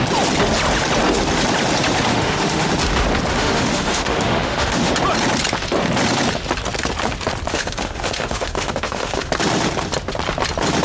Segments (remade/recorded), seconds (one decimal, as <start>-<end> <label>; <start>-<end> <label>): 0.0-2.1 recorded; 2.1-2.7 remade; 2.7-3.3 recorded; 3.3-4.9 remade; 4.9-7.5 recorded; 7.5-9.3 remade; 9.3-10.8 recorded